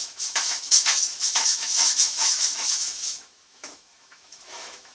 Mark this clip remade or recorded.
remade